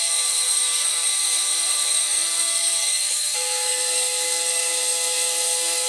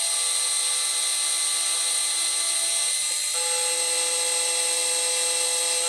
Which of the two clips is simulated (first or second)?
first